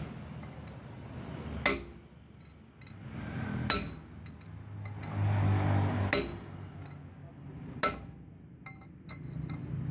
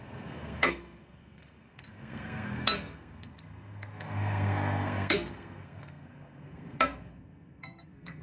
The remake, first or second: second